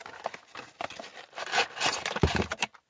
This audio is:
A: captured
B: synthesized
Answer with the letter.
A